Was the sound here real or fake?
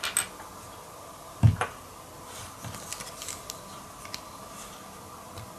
real